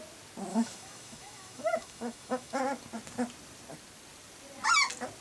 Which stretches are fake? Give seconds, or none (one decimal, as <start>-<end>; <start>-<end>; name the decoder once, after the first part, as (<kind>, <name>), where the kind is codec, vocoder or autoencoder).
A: 0.5-2.6 (autoencoder, DAC-VAE)